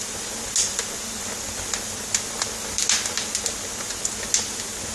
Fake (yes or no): no